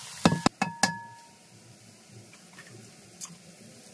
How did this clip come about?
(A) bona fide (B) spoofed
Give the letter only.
A